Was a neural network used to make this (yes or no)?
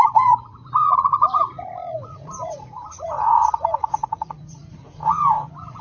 yes